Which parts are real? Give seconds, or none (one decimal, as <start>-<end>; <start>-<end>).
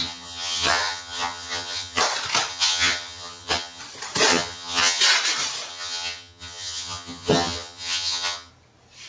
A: 2.0-2.5; 3.8-4.3; 5.0-5.7; 8.5-9.1